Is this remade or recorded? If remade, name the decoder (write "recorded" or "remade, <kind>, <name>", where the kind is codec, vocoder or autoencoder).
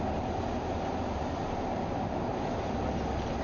recorded